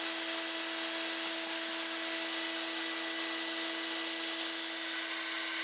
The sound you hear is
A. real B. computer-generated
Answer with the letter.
A